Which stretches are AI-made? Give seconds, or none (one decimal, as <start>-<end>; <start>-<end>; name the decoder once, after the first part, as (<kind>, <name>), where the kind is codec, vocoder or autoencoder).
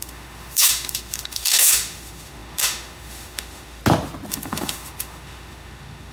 0.0-3.8 (autoencoder, DAC-VAE); 4.3-6.1